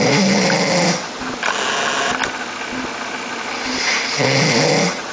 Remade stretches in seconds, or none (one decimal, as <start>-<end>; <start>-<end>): none